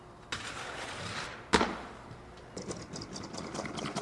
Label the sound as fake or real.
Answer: real